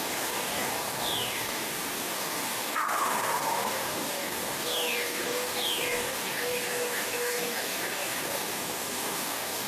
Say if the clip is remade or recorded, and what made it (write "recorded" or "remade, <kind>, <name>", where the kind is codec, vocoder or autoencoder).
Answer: remade, codec, DAC